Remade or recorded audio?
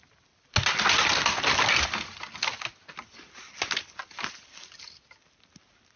recorded